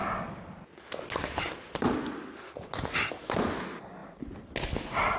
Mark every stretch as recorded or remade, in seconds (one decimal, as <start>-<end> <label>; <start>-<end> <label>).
0.0-5.2 recorded